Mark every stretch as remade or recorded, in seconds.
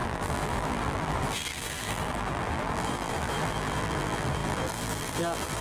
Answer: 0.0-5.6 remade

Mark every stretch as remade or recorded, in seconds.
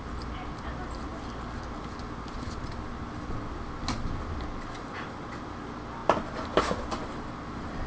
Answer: 0.0-7.9 recorded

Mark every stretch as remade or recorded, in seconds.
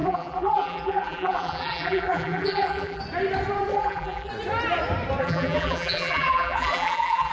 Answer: 0.0-3.0 remade; 3.0-3.7 recorded; 3.7-4.3 remade; 4.3-5.2 recorded; 5.2-7.3 remade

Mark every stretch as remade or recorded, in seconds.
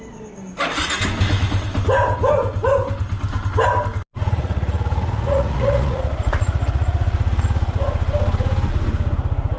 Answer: 0.0-4.2 recorded; 4.2-7.8 remade; 7.8-9.6 recorded